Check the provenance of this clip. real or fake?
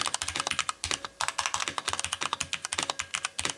real